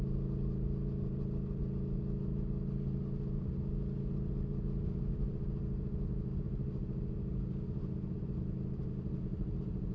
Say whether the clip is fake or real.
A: real